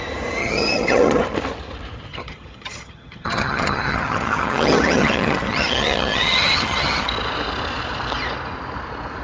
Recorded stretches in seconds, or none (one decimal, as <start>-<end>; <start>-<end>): 0.0-0.4; 1.2-2.1; 7.1-9.2